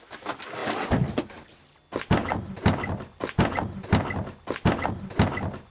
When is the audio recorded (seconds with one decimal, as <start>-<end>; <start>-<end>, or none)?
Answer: 0.0-5.7